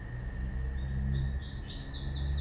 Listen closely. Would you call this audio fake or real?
real